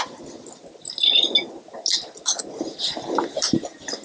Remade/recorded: recorded